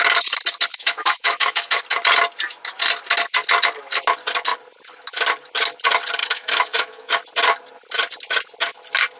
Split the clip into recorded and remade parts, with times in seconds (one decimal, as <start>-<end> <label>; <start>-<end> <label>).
0.0-0.7 recorded; 0.7-1.8 remade; 1.8-6.2 recorded; 6.2-7.1 remade; 7.1-9.2 recorded